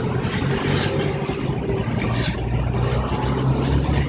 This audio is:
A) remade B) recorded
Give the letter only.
B